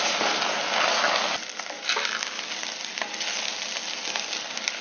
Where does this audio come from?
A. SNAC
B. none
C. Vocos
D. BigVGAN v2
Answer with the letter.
B